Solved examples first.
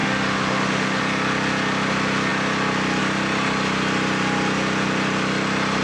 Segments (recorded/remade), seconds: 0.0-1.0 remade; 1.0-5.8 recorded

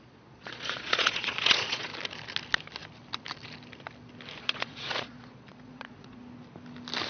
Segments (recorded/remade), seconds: 0.0-1.9 remade; 1.9-4.4 recorded; 4.4-6.2 remade; 6.2-7.1 recorded

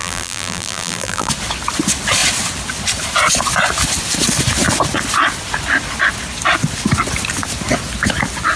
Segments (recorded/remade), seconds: 0.0-1.3 remade; 1.3-8.6 recorded

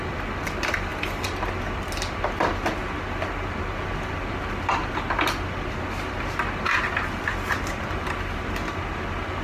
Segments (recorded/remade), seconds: 0.0-9.4 recorded